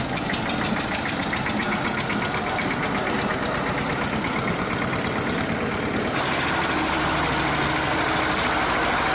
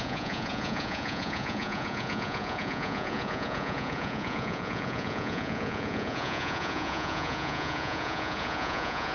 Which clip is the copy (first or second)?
second